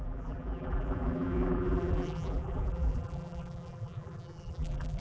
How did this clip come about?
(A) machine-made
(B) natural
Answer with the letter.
A